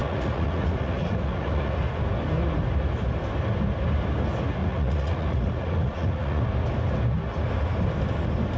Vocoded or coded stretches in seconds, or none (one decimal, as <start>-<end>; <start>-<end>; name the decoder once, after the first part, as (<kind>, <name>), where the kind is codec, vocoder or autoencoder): 0.0-1.7 (vocoder, Vocos); 4.6-6.4